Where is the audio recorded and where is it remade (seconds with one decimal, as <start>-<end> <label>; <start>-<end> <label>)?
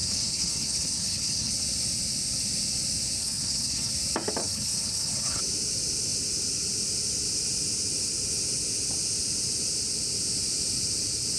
0.0-1.5 remade; 1.5-3.2 recorded; 3.2-3.9 remade; 3.9-4.4 recorded; 4.4-5.4 remade; 5.4-11.4 recorded